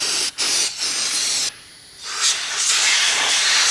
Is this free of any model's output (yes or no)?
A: yes